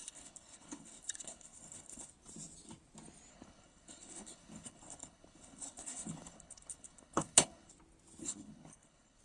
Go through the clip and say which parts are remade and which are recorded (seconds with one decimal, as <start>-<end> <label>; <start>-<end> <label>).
0.0-2.1 remade; 2.1-3.3 recorded; 3.3-7.7 remade; 7.7-8.2 recorded; 8.2-9.2 remade